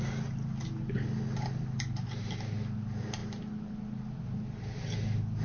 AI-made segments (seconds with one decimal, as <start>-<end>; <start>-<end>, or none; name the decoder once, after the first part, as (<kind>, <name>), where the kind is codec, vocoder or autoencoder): none